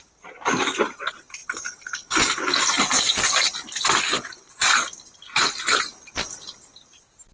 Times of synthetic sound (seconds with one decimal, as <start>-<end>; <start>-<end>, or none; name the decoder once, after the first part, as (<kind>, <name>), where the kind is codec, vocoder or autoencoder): none